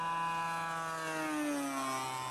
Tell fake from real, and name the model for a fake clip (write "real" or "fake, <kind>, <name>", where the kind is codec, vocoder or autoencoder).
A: real